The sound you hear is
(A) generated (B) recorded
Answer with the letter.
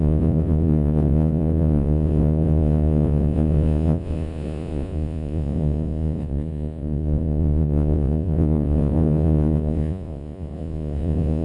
A